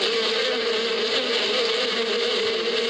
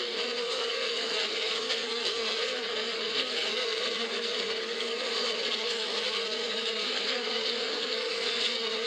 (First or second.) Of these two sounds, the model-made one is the second